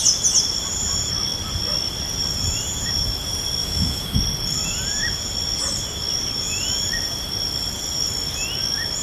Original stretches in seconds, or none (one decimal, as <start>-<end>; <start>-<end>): 0.0-3.6; 4.2-9.0